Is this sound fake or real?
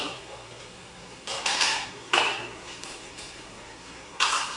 fake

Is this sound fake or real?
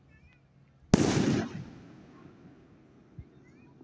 real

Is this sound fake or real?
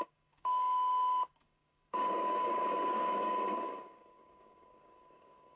fake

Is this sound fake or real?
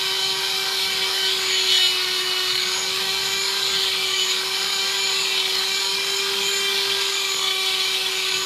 fake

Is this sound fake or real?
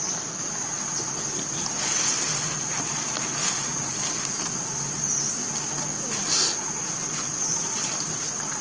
real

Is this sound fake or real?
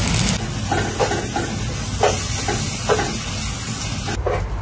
real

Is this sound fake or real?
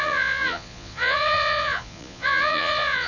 fake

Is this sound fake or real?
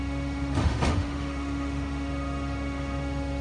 fake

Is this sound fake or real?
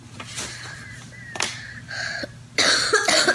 real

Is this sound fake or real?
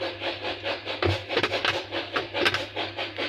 real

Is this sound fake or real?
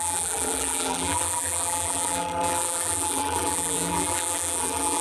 fake